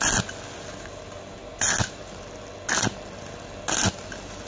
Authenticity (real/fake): real